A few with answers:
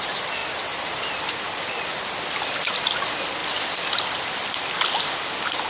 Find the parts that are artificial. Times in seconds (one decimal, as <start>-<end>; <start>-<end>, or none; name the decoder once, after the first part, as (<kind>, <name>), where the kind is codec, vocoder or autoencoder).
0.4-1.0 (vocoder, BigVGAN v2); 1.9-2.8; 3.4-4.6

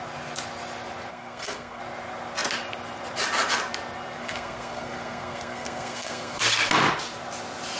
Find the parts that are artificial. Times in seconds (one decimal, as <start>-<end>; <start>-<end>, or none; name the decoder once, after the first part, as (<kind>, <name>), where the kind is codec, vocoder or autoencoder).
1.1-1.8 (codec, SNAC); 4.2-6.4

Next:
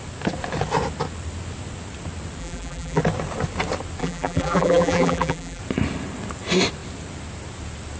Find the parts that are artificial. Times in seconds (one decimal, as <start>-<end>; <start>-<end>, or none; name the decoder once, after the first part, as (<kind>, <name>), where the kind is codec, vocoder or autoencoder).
2.4-3.0 (vocoder, BigVGAN v2); 4.0-5.6

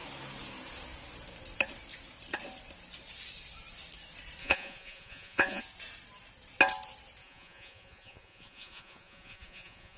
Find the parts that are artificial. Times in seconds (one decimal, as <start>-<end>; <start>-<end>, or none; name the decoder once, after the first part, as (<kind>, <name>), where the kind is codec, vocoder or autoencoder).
4.4-5.6 (vocoder, Vocos); 7.2-10.0

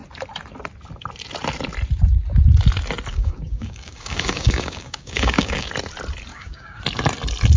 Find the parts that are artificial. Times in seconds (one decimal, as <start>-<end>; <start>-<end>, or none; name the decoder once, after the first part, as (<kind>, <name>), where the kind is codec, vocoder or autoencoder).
3.1-5.7 (codec, DAC); 6.3-6.8